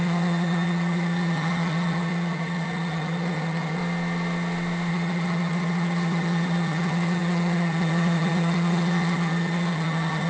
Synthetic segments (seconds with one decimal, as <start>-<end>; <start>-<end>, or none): 0.0-3.8; 4.9-10.3